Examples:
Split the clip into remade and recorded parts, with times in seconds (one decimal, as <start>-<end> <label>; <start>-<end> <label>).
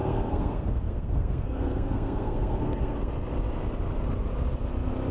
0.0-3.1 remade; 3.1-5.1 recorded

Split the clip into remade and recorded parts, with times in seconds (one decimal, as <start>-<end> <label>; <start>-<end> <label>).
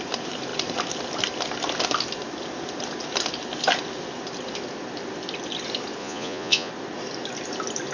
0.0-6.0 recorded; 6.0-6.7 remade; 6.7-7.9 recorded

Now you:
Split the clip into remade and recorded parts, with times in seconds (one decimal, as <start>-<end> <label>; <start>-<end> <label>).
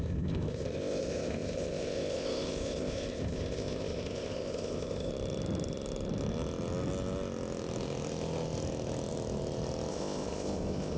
0.0-5.1 remade; 5.1-9.9 recorded; 9.9-11.0 remade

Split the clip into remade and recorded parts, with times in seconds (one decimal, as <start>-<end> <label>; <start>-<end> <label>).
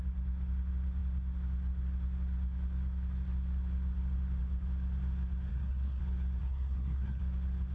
0.0-5.5 recorded; 5.5-6.0 remade; 6.0-6.4 recorded; 6.4-7.2 remade; 7.2-7.7 recorded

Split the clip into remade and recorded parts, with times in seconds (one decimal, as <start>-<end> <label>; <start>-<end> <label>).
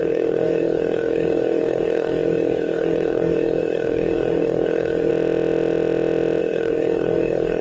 0.0-5.1 remade; 5.1-6.4 recorded; 6.4-7.6 remade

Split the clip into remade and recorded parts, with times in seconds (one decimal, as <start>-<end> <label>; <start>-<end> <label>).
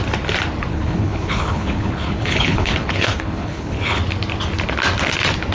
0.0-0.7 recorded; 0.7-4.0 remade; 4.0-5.5 recorded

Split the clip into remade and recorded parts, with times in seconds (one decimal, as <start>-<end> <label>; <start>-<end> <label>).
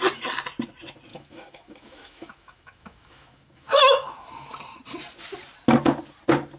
0.0-1.1 recorded; 1.1-4.5 remade; 4.5-6.6 recorded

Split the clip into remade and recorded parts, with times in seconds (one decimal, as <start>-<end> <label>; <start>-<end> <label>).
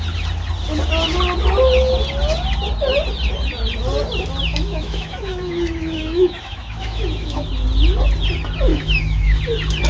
0.0-4.5 recorded; 4.5-7.5 remade; 7.5-8.7 recorded; 8.7-9.4 remade; 9.4-9.9 recorded